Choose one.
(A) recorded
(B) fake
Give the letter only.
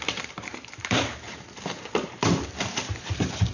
B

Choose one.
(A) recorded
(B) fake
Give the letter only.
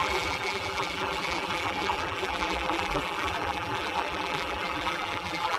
B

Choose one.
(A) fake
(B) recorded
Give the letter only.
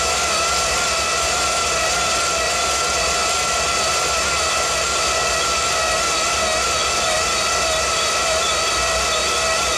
B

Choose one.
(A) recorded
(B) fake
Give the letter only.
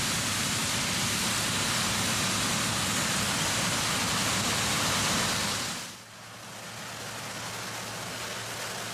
A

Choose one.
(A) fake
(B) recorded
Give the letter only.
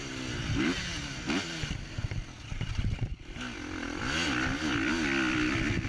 B